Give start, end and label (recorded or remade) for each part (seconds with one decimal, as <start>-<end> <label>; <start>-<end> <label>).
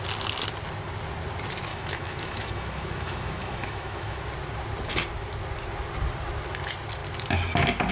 0.0-1.7 recorded; 1.7-4.2 remade; 4.2-7.9 recorded